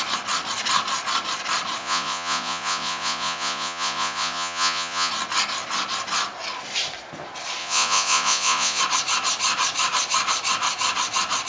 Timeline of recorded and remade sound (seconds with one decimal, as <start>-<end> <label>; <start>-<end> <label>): 0.0-1.8 recorded; 1.8-5.1 remade; 5.1-7.6 recorded; 7.6-8.8 remade; 8.8-11.5 recorded